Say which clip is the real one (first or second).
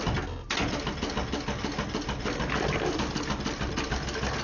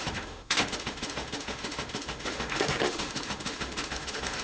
first